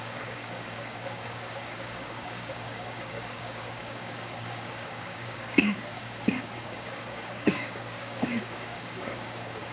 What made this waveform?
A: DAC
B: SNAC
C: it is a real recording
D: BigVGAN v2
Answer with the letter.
A